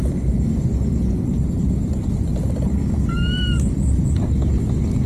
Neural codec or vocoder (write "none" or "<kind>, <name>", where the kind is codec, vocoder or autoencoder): none